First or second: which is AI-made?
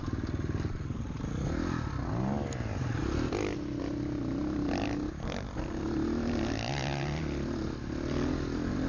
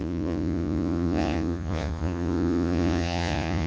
second